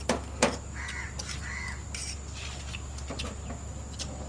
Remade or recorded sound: recorded